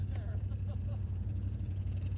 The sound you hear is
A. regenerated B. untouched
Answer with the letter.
A